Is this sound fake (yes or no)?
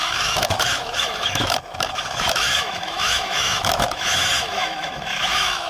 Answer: yes